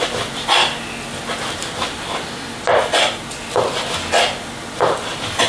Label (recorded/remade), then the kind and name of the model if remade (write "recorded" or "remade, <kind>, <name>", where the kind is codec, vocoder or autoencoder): recorded